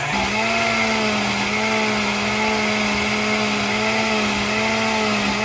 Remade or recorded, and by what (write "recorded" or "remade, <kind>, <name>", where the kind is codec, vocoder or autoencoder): recorded